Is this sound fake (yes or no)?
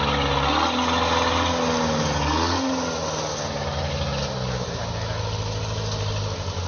no